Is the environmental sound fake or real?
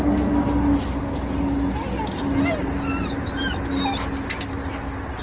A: real